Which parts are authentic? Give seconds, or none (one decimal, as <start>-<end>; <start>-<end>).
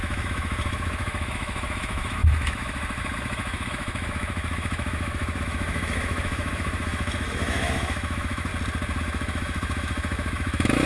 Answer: 8.5-9.0